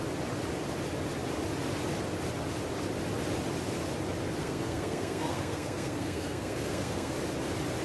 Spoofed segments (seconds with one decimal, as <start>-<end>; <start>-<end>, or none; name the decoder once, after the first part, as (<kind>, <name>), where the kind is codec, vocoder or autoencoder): 4.4-7.1 (codec, SNAC)